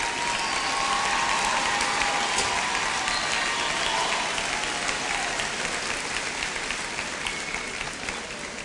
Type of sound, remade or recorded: recorded